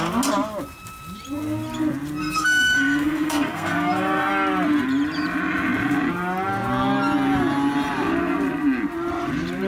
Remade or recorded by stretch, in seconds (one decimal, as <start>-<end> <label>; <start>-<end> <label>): 0.0-2.2 recorded; 2.2-4.3 remade; 4.3-9.7 recorded